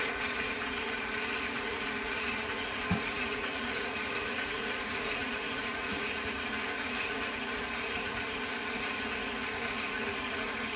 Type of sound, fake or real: fake